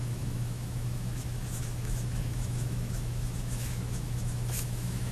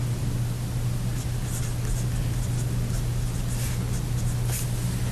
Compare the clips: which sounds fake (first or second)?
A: first